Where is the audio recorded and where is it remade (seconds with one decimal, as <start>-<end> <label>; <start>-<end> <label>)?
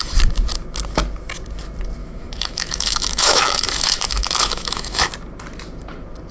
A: 0.0-2.0 recorded; 2.0-5.1 remade; 5.1-6.3 recorded